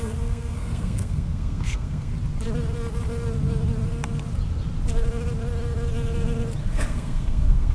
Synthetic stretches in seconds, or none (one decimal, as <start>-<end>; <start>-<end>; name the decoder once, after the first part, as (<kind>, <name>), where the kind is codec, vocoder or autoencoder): 0.0-2.1 (codec, SNAC); 6.6-7.7